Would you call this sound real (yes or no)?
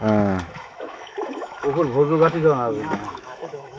no